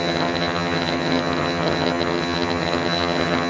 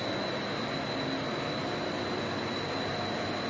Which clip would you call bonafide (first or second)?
second